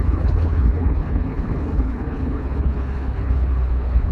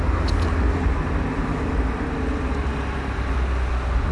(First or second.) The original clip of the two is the second